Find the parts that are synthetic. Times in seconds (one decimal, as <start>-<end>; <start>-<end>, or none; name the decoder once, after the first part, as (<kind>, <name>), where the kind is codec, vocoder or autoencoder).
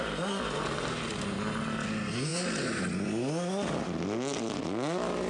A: none